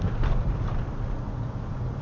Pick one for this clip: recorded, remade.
recorded